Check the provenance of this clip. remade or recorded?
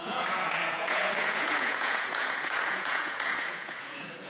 remade